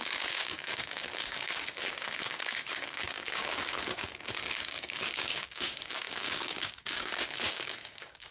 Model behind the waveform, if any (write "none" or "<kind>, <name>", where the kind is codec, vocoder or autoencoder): codec, DAC